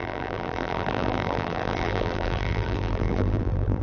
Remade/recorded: remade